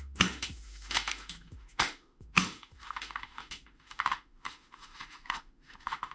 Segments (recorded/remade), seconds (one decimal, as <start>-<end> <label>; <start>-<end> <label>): 0.0-6.1 remade